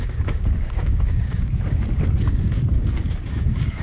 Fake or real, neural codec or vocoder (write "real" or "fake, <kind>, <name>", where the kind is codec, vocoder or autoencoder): fake, codec, DAC